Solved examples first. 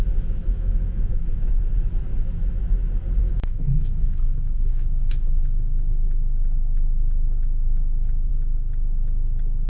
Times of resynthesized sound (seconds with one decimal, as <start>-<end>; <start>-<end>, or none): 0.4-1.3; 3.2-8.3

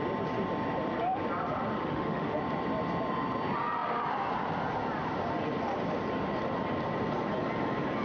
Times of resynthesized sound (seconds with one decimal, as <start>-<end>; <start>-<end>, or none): 1.8-2.4

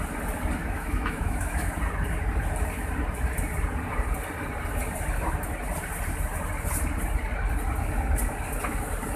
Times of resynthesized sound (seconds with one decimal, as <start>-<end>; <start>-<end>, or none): 0.6-1.7